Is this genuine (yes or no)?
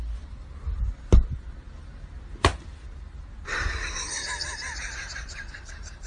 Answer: yes